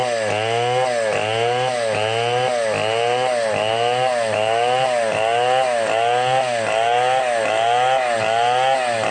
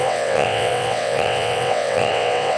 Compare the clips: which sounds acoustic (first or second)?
first